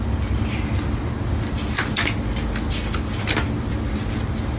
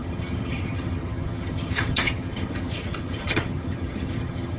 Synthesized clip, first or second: second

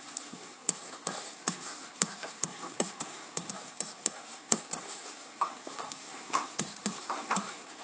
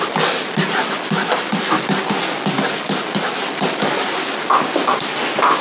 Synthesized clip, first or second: first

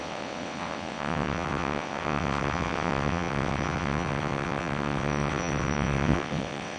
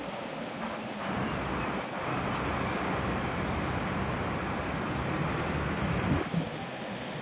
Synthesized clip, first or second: first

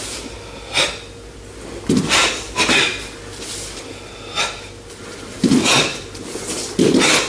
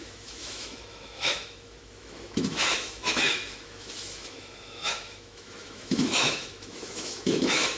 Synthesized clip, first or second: second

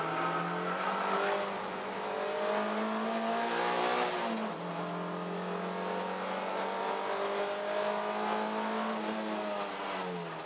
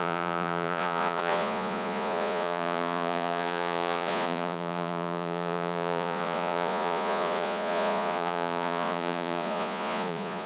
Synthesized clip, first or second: second